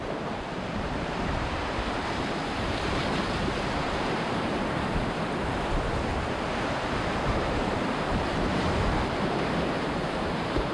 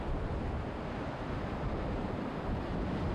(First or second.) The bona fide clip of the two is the second